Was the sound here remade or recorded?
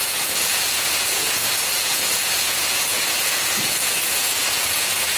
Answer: remade